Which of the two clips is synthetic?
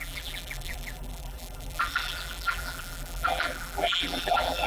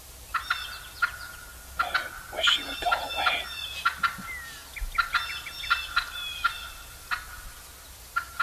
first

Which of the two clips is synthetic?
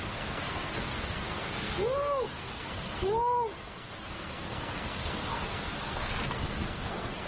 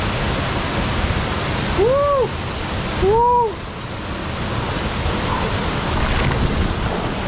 first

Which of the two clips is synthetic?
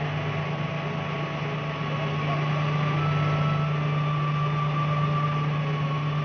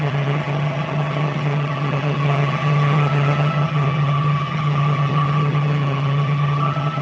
second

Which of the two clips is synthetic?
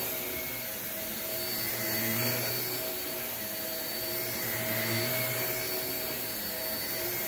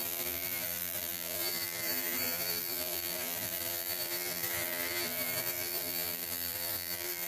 second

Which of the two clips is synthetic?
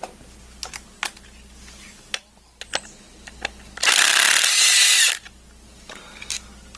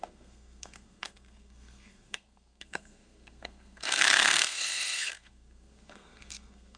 second